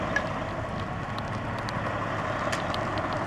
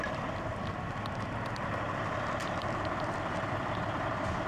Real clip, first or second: first